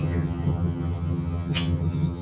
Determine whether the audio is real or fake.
fake